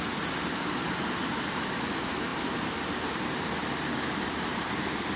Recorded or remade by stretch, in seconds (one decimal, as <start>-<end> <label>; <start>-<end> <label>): 0.0-2.3 recorded; 2.3-3.5 remade; 3.5-4.5 recorded; 4.5-5.2 remade

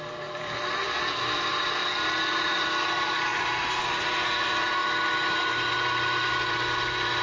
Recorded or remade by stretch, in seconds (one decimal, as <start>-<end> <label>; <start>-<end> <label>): 0.0-1.8 remade; 1.8-2.3 recorded; 2.3-4.8 remade; 4.8-5.4 recorded; 5.4-7.2 remade

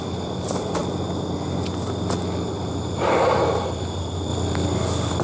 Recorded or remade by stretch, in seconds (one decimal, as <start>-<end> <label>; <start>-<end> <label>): 0.0-0.8 remade; 0.8-2.4 recorded; 2.4-4.3 remade; 4.3-5.2 recorded

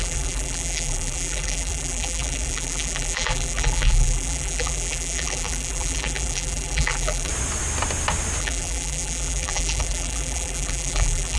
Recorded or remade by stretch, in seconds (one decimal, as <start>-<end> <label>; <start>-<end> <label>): 0.0-7.3 remade; 7.3-8.4 recorded; 8.4-11.4 remade

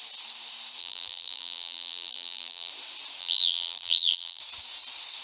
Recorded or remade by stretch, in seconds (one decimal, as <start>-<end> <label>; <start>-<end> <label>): 0.0-0.8 recorded; 0.8-2.7 remade; 2.7-3.2 recorded; 3.2-4.4 remade; 4.4-5.2 recorded

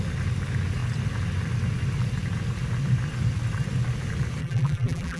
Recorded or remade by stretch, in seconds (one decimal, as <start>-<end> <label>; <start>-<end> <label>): 0.0-4.4 recorded; 4.4-5.2 remade

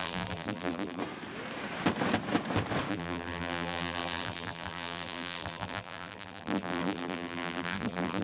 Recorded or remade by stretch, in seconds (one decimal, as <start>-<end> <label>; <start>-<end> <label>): 0.0-1.0 remade; 1.0-2.9 recorded; 2.9-8.2 remade